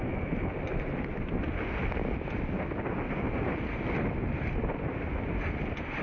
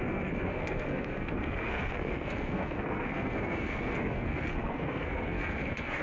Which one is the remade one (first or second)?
second